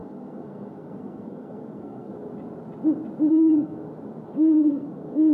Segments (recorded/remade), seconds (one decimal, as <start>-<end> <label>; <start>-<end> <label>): 0.0-2.1 remade; 2.1-3.3 recorded; 3.3-3.8 remade; 3.8-4.3 recorded; 4.3-5.3 remade